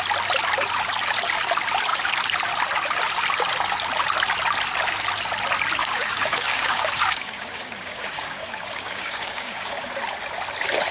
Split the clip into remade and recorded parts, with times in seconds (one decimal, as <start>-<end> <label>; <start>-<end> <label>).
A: 0.0-5.8 recorded; 5.8-9.8 remade; 9.8-10.9 recorded